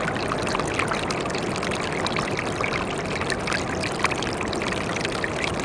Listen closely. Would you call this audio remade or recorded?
recorded